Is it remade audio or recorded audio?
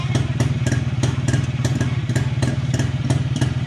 remade